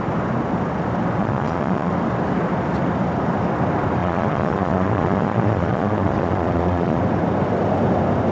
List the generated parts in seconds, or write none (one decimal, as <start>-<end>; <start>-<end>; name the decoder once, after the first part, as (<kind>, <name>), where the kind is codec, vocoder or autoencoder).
1.2-1.9 (vocoder, Vocos); 4.0-7.0